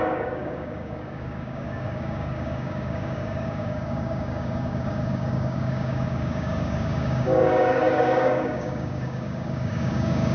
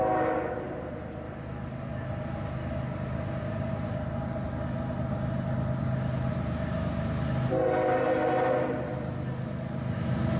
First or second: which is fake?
first